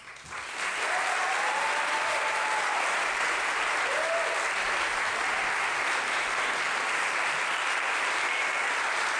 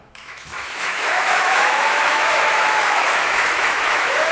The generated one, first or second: second